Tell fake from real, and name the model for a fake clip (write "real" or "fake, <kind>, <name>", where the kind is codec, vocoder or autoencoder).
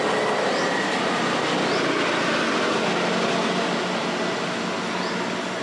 real